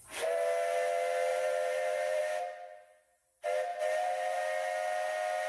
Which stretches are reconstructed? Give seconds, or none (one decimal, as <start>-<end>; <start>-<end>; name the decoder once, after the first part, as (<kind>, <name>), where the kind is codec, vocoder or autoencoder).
1.3-2.2 (vocoder, BigVGAN v2); 3.7-4.4